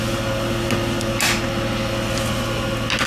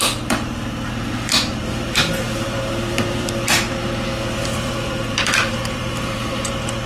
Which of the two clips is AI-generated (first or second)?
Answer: second